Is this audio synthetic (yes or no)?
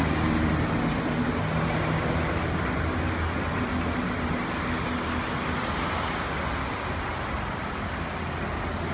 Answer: no